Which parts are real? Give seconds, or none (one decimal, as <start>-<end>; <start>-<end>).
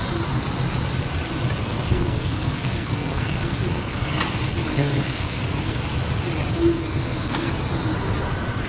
0.0-1.6; 4.2-4.7; 5.8-6.5; 7.5-8.7